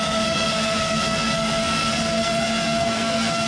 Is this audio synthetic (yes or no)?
yes